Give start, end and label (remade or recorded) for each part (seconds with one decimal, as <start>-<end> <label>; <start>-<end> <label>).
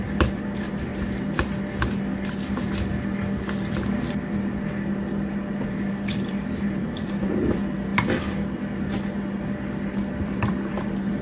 0.0-0.9 remade; 0.9-5.9 recorded; 5.9-7.9 remade; 7.9-10.1 recorded; 10.1-11.2 remade